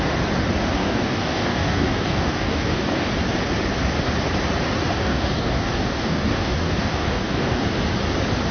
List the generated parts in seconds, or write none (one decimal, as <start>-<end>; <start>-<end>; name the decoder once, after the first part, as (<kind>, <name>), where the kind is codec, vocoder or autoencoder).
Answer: 0.8-3.1 (codec, DAC); 4.9-7.6